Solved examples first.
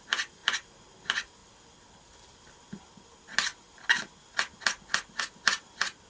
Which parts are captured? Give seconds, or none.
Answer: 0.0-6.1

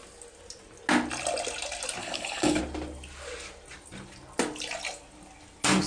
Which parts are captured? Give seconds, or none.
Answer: 0.0-2.0; 2.6-5.9

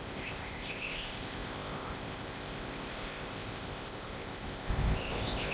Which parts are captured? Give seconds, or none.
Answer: none

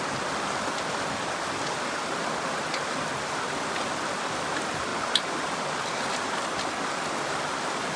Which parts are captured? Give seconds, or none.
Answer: 0.0-8.0

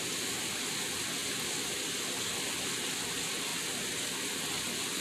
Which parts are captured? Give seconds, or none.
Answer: 0.0-5.0